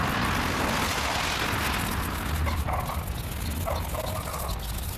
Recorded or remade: recorded